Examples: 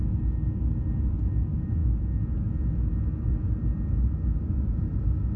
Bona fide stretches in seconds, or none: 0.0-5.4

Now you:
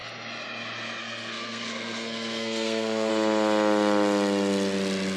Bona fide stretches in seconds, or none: 0.0-1.0; 3.1-5.2

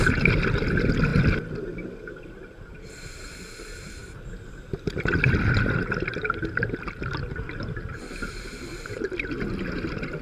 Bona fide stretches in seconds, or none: 0.0-1.1; 3.2-10.2

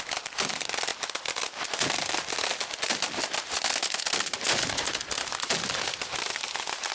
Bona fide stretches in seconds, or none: 0.0-6.9

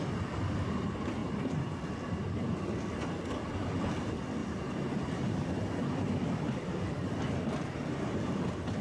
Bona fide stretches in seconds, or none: 0.0-1.2; 1.8-4.4; 6.1-8.8

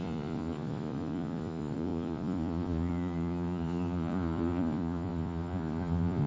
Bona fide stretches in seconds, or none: none

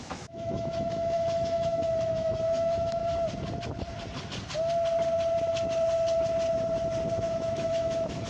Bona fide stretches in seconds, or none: 3.0-7.1